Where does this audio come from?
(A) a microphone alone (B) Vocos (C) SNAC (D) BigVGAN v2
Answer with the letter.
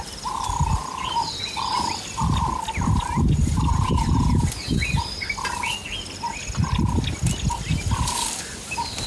A